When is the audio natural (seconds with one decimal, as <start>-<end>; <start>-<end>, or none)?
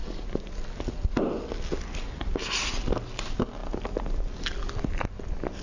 0.0-5.6